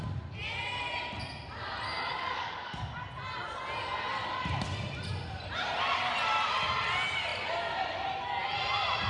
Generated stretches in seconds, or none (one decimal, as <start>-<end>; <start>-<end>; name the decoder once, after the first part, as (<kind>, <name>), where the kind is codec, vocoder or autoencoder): 2.1-2.9 (codec, DAC)